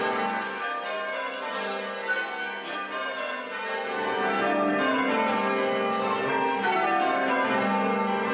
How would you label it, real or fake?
real